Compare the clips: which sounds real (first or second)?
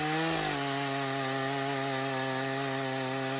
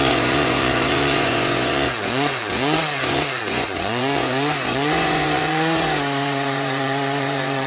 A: first